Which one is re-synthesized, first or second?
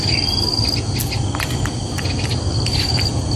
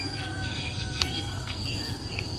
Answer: second